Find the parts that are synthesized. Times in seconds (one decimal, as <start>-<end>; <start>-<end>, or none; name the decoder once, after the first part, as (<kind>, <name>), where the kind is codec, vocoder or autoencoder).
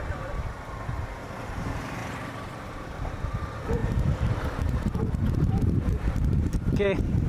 0.0-7.3 (vocoder, BigVGAN v2)